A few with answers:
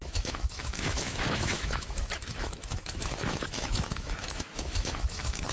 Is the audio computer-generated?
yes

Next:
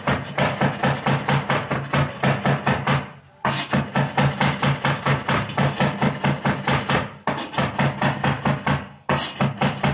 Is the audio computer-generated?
no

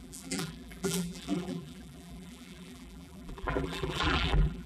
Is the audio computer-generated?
yes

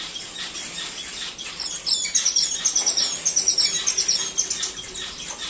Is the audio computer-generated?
no